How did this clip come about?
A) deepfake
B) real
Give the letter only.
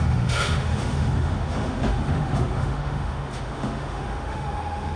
A